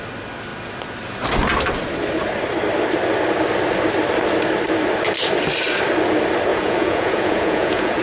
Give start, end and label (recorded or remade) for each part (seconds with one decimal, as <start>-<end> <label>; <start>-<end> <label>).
0.0-6.5 recorded; 6.5-8.0 remade